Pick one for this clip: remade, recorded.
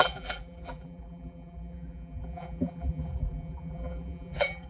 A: remade